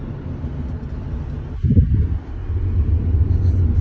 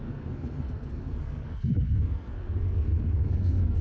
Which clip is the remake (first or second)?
second